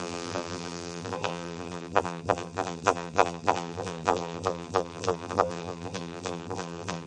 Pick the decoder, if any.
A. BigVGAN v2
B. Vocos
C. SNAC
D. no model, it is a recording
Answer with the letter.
A